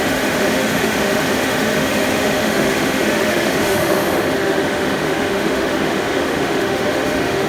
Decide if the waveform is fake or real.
fake